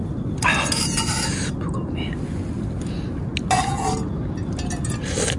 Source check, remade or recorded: recorded